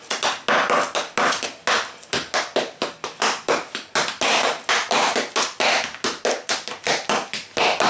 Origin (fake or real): real